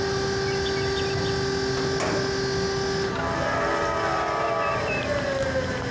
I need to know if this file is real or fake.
real